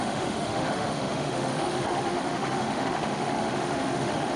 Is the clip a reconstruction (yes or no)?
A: yes